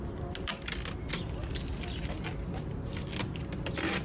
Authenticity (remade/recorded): recorded